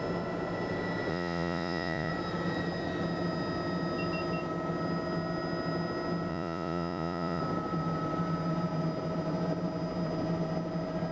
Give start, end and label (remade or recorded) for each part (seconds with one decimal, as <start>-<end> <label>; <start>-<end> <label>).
0.0-1.1 recorded; 1.1-2.1 remade; 2.1-6.3 recorded; 6.3-7.4 remade; 7.4-11.1 recorded